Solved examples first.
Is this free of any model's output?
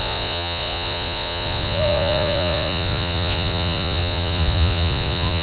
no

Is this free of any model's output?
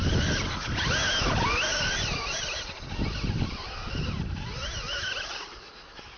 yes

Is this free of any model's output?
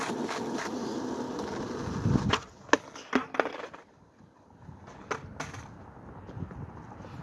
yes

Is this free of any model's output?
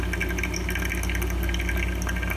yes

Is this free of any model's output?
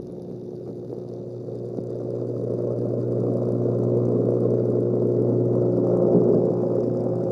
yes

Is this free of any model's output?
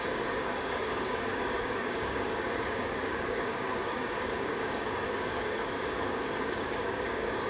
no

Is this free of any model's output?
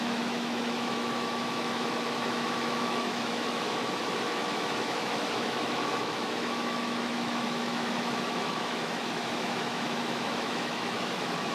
no